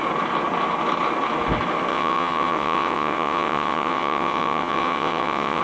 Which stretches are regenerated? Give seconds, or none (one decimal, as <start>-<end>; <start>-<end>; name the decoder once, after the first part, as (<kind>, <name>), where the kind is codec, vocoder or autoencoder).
1.9-5.6 (vocoder, WaveNeXt)